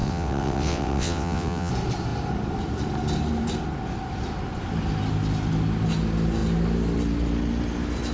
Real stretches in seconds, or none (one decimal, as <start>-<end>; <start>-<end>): 1.7-8.1